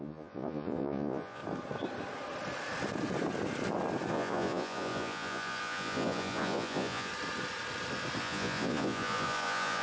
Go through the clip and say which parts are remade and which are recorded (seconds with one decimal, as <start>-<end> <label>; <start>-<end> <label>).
0.0-1.4 remade; 1.4-4.1 recorded; 4.1-7.1 remade; 7.1-8.2 recorded; 8.2-9.8 remade